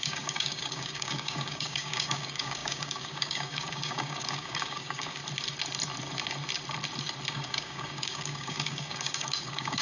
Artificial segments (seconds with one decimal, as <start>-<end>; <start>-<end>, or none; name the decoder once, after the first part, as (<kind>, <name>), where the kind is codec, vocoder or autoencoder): 0.0-5.2 (codec, DAC); 7.3-9.8